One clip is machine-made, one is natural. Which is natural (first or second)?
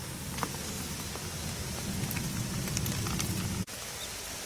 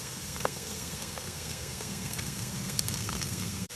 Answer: first